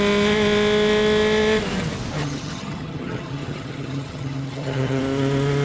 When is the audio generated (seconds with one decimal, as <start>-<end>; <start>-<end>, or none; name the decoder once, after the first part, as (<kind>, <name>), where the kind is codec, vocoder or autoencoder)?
2.2-5.0 (vocoder, HiFi-GAN)